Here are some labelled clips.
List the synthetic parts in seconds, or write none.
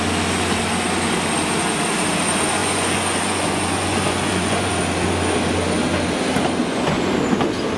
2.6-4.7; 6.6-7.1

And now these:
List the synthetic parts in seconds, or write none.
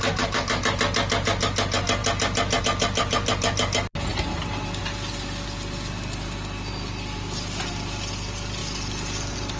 none